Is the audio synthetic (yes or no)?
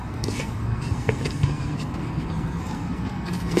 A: yes